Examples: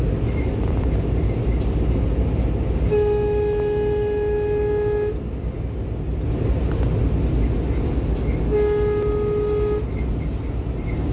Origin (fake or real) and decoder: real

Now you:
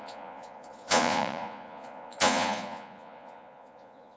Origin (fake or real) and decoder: fake, vocoder, Vocos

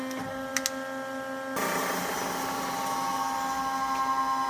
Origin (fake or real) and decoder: real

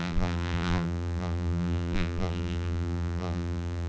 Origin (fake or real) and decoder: fake, vocoder, BigVGAN v2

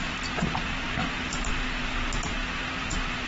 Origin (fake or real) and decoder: fake, vocoder, BigVGAN v2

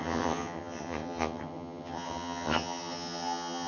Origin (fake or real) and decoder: fake, vocoder, HiFi-GAN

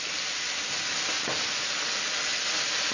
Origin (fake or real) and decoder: real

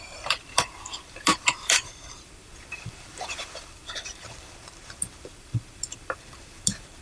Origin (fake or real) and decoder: fake, vocoder, BigVGAN v2